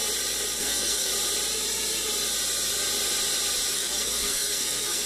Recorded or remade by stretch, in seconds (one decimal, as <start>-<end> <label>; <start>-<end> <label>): 0.0-0.6 recorded; 0.6-1.1 remade; 1.1-3.7 recorded; 3.7-5.1 remade